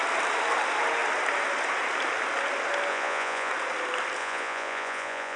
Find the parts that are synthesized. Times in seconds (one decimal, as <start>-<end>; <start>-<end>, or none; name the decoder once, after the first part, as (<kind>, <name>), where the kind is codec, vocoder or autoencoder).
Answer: 2.9-3.5 (vocoder, Vocos); 4.2-5.4